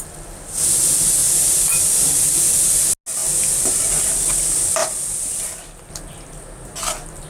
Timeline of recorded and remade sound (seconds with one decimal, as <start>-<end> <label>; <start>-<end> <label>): 0.0-1.2 recorded; 1.2-2.6 remade; 2.6-3.2 recorded; 3.2-4.1 remade; 4.1-7.3 recorded